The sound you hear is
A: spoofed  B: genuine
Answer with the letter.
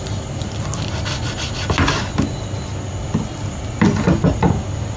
B